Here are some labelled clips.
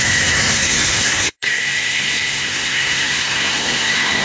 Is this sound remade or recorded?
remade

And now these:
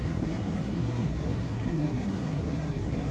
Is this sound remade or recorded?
remade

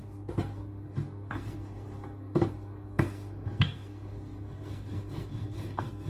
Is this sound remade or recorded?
remade